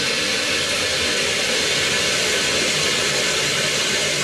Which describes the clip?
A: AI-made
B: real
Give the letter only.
A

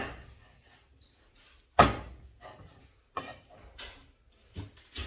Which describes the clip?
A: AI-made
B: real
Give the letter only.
B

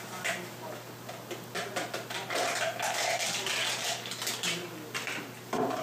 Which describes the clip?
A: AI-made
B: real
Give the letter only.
B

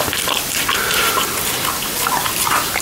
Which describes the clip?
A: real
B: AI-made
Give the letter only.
A